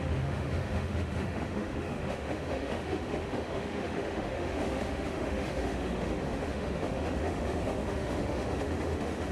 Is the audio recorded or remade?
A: remade